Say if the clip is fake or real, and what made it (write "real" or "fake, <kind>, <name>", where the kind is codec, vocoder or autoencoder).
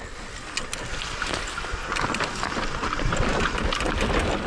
real